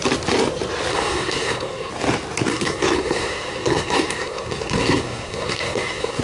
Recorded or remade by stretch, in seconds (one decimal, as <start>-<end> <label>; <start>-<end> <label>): 0.0-0.9 recorded; 0.9-1.9 remade; 1.9-2.5 recorded; 2.5-6.2 remade